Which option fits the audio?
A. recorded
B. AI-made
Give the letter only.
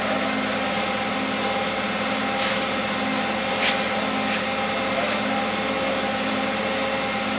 A